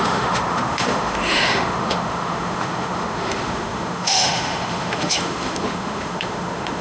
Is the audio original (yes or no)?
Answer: no